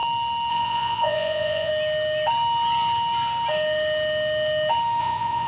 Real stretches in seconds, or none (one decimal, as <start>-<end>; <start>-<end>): 0.0-0.5; 1.7-5.0

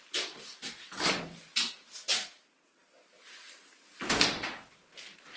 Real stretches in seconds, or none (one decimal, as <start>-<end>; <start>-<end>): 0.0-5.4

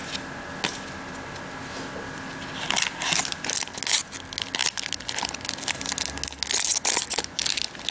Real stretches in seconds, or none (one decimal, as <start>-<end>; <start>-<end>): 0.0-7.9

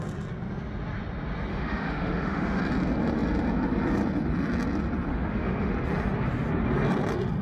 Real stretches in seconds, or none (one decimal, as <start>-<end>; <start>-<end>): 0.0-1.5; 2.6-5.1; 5.7-7.4

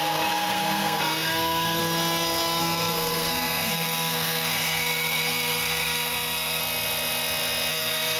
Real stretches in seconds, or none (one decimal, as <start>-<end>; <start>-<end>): 1.8-2.6; 6.6-7.7

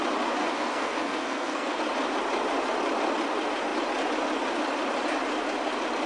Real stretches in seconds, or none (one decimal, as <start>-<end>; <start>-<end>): 0.0-0.4; 1.8-6.1